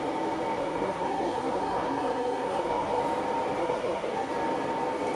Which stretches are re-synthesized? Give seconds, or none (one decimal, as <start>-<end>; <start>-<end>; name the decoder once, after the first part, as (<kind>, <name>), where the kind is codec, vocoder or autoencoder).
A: 0.6-3.0 (codec, SNAC); 3.6-4.3

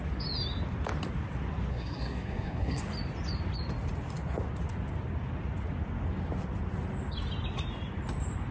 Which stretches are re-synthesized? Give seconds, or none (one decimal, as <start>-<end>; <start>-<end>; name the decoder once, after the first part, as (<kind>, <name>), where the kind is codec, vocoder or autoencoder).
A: 1.7-2.8 (codec, SNAC)

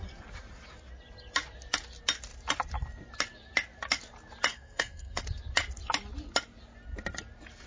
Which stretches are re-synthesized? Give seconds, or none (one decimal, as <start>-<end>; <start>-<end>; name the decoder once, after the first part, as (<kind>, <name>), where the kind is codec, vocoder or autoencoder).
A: 4.5-5.2 (codec, SNAC)